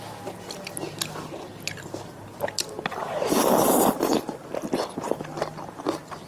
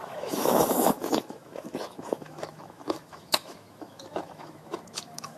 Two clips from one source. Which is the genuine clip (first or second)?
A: first